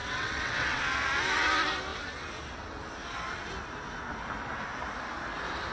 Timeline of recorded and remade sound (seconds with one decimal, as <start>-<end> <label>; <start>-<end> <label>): 0.0-0.8 remade; 0.8-5.7 recorded